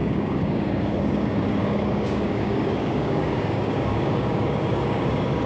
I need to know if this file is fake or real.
fake